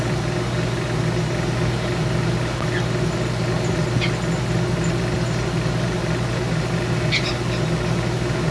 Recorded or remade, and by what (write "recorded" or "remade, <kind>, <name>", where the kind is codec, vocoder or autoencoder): recorded